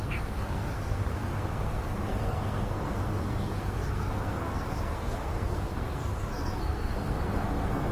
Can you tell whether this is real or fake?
fake